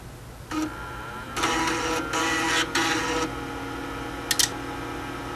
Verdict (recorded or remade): recorded